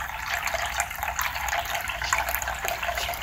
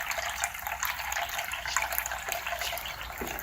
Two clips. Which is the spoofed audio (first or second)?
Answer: first